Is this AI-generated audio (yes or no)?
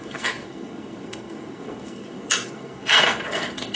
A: yes